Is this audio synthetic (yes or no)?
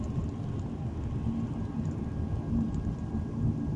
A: no